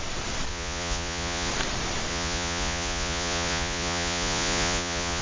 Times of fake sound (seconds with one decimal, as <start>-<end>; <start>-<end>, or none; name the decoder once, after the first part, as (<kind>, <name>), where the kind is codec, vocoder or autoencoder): 0.5-1.5 (vocoder, Vocos); 2.1-5.2

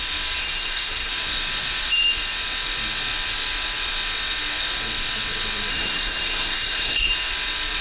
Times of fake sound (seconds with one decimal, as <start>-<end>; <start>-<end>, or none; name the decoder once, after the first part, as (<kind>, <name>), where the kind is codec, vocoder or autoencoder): 0.4-1.1 (codec, SNAC); 5.7-7.1

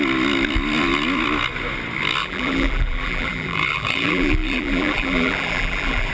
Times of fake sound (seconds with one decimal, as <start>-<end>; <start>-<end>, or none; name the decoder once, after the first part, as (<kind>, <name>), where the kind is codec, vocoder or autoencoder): 2.2-6.1 (vocoder, BigVGAN v2)

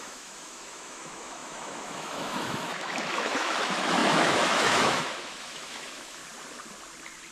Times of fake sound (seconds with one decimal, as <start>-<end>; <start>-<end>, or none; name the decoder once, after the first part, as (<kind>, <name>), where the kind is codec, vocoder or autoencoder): 0.0-6.2 (autoencoder, DAC-VAE)

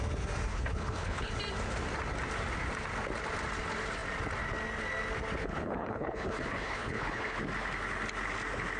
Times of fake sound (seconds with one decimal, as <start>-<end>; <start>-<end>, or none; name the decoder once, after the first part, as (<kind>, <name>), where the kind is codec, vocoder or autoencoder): 0.5-1.3 (codec, HILCodec); 5.4-7.4

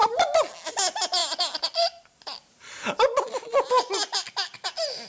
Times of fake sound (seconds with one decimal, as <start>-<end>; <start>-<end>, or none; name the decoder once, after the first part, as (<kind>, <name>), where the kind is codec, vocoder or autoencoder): none

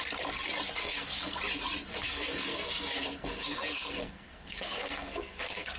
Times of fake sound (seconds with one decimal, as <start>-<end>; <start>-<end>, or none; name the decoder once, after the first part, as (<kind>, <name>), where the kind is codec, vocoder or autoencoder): 0.8-1.4 (codec, SNAC); 1.9-5.8

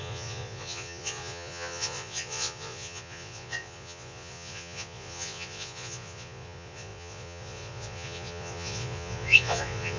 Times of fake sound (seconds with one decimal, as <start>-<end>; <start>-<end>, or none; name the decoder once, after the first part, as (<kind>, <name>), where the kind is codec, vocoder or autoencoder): 0.0-10.0 (vocoder, Vocos)